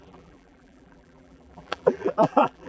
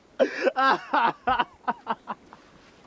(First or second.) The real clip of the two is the second